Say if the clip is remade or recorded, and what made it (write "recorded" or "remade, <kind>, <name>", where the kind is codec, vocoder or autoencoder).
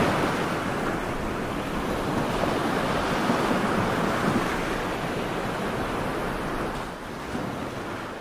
recorded